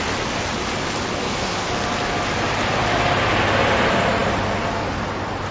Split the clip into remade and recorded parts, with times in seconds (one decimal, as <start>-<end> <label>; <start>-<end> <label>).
0.0-1.2 recorded; 1.2-1.7 remade; 1.7-5.5 recorded

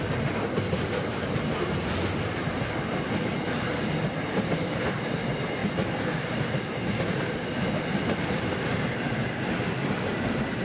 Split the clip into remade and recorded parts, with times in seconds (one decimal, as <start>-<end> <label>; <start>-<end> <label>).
0.0-5.6 recorded; 5.6-7.0 remade; 7.0-10.6 recorded

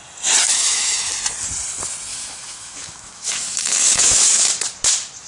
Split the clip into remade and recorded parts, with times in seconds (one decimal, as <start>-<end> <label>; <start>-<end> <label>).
0.0-0.4 recorded; 0.4-1.1 remade; 1.1-2.1 recorded; 2.1-4.5 remade; 4.5-5.3 recorded

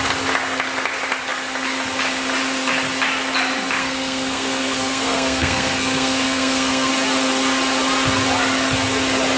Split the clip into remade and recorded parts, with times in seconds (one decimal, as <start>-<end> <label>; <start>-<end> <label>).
0.0-3.8 recorded; 3.8-6.9 remade; 6.9-9.4 recorded

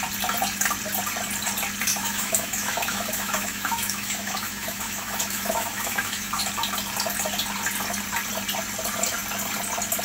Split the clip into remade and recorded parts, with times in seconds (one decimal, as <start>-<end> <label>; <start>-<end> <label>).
0.0-1.9 recorded; 1.9-6.4 remade; 6.4-10.0 recorded

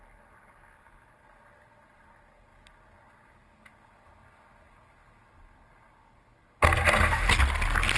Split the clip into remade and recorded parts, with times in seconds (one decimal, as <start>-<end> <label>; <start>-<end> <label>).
0.0-8.0 recorded

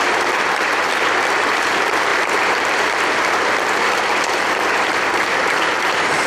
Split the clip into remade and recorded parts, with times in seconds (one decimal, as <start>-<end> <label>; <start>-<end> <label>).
0.0-2.1 recorded; 2.1-6.3 remade

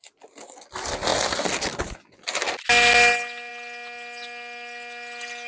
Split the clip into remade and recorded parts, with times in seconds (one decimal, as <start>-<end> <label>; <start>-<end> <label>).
0.0-5.5 recorded